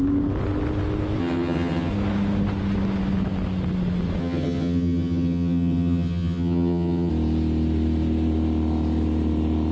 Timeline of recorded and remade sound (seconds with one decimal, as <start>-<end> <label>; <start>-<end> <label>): 0.0-1.2 recorded; 1.2-1.9 remade; 1.9-4.2 recorded; 4.2-7.1 remade; 7.1-9.7 recorded